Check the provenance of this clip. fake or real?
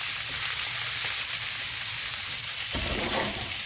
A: real